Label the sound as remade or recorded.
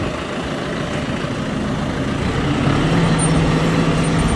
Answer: recorded